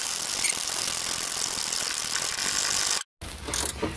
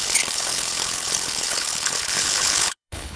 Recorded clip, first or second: first